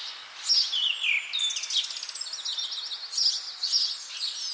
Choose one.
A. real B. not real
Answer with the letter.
A